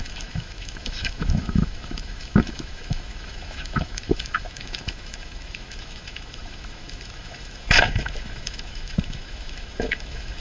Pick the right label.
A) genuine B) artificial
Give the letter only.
B